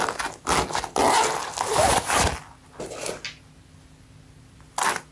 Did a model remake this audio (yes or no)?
no